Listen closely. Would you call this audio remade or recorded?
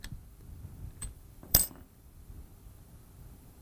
remade